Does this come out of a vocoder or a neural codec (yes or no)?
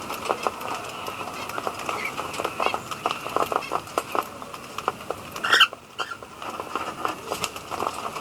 no